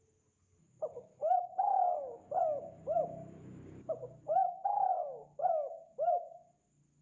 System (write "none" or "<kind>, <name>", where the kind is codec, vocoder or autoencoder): autoencoder, DAC-VAE